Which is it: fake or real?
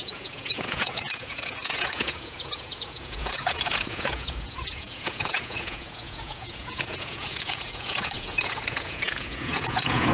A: fake